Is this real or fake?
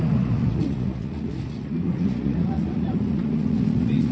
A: fake